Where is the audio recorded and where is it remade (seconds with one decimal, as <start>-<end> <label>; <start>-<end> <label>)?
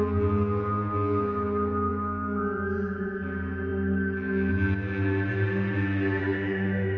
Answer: 0.0-6.2 recorded; 6.2-7.0 remade